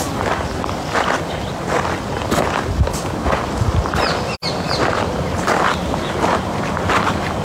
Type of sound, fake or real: real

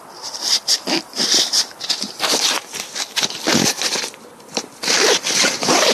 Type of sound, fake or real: fake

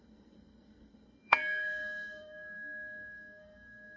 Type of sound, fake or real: fake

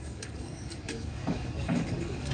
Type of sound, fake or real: fake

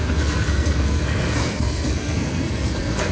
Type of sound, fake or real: fake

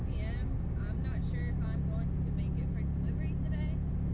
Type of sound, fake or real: real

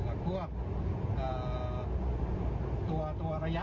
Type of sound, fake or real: real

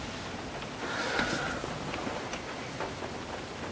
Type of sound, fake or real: real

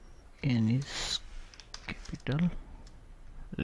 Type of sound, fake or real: real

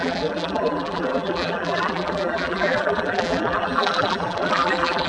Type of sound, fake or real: fake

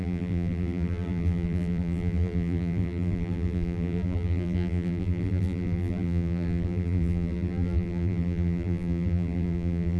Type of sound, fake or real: fake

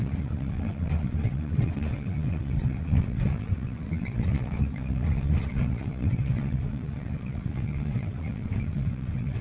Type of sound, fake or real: fake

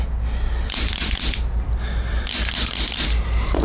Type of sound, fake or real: real